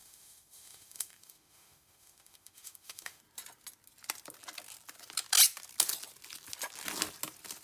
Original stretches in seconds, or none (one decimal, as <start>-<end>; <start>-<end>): 3.2-7.6